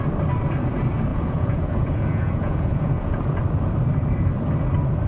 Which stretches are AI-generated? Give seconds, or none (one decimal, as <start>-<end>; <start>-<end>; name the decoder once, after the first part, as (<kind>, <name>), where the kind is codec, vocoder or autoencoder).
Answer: 1.1-3.4 (vocoder, Vocos)